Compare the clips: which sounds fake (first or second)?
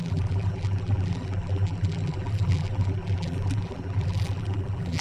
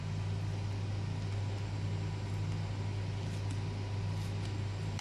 first